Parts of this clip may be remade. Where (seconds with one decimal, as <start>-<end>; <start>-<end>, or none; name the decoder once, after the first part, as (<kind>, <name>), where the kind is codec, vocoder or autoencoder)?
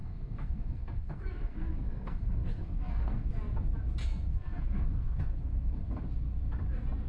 0.0-3.3 (codec, SNAC); 4.0-6.0